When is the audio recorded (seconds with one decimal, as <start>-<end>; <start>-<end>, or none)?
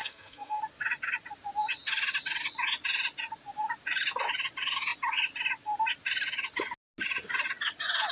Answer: 0.6-8.1